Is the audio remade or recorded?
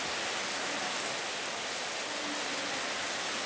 recorded